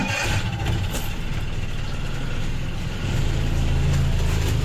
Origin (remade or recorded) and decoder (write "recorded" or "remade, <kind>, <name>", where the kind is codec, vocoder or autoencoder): recorded